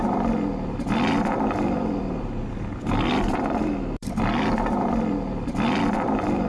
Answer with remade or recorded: remade